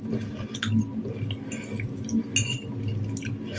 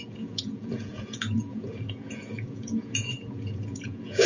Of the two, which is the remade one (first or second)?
second